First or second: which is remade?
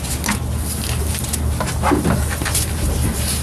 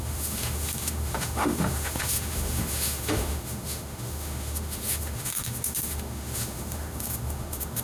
second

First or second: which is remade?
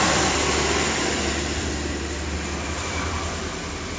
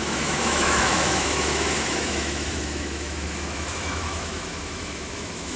second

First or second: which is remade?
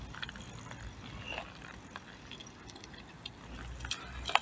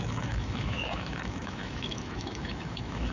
second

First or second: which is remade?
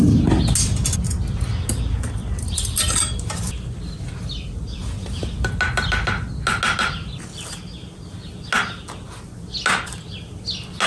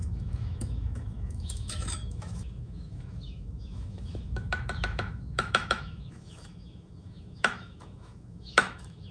second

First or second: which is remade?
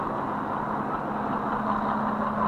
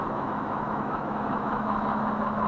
second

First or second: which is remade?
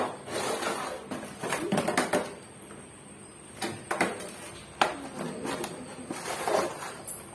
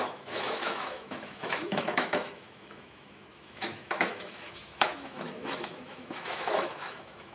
second